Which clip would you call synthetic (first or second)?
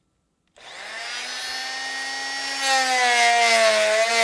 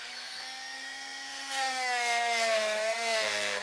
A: second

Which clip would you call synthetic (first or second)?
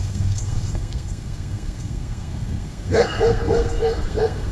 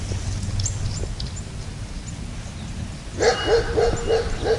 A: first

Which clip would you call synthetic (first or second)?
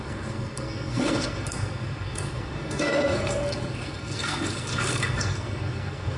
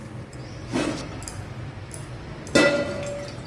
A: first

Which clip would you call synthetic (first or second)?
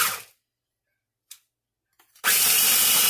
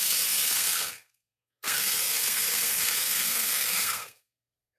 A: second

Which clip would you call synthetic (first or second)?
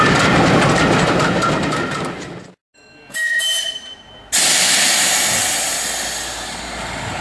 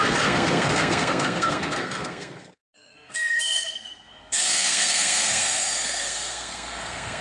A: second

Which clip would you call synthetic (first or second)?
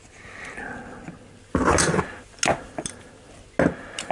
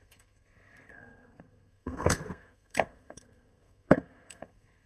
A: second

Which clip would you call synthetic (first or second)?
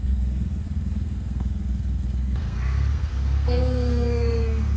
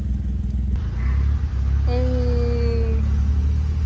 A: first